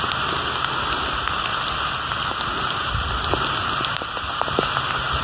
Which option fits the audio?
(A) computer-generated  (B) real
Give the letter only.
B